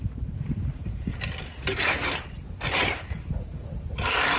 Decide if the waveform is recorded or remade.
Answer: recorded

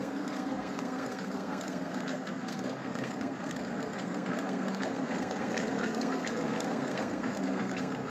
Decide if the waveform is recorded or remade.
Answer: remade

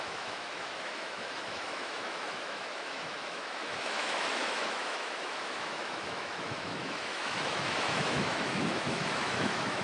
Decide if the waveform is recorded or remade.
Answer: remade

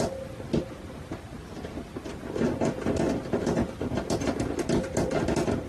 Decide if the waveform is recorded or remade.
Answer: recorded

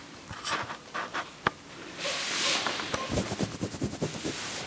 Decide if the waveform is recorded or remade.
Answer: recorded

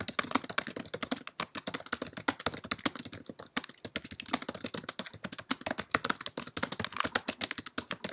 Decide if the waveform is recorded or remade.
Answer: recorded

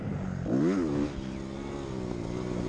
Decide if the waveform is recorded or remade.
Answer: recorded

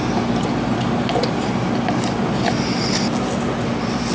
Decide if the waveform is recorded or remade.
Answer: recorded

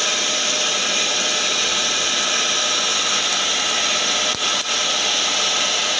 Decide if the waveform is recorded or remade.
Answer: recorded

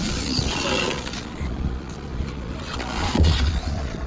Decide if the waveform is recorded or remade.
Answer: remade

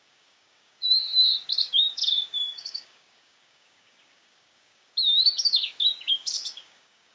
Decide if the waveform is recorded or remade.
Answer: remade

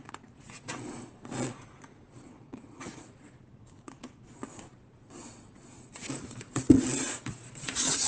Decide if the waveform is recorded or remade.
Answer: remade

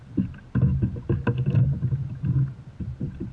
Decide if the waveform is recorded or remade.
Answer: remade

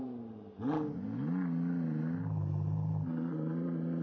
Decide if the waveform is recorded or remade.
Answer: recorded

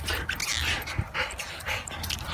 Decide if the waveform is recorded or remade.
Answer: recorded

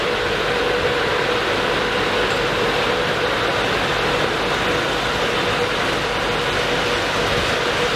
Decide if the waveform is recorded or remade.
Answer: recorded